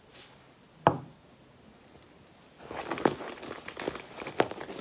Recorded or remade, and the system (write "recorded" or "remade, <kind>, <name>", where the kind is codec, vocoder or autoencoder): recorded